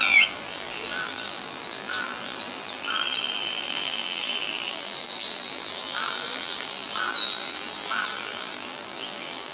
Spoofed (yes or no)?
yes